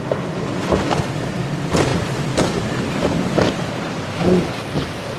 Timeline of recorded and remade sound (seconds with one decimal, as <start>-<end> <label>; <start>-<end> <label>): 0.0-5.2 remade